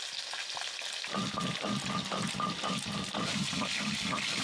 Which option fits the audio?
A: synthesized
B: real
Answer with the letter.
B